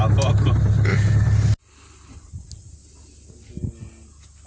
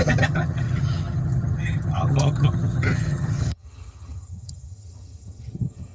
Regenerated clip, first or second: second